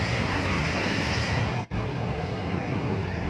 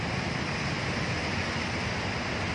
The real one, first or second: second